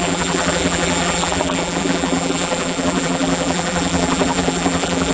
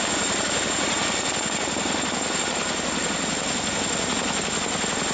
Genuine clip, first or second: second